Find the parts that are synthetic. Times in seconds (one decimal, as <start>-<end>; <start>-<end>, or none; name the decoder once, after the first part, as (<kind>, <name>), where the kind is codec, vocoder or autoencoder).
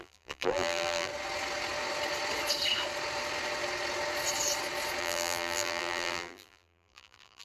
0.0-1.1 (vocoder, BigVGAN v2); 5.0-7.4